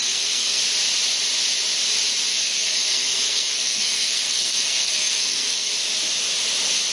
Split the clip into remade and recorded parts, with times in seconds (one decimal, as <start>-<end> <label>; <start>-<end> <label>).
0.0-0.6 remade; 0.6-2.3 recorded; 2.3-5.7 remade; 5.7-6.9 recorded